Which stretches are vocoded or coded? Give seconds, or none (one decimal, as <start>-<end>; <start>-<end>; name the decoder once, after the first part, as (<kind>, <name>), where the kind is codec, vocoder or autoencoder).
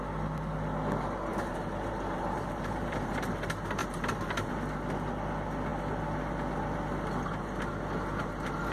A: 1.3-3.1 (vocoder, BigVGAN v2); 3.8-4.5